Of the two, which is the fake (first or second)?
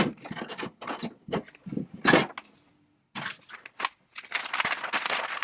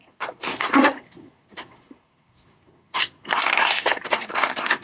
second